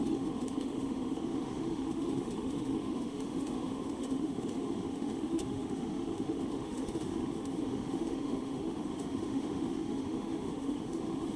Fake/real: fake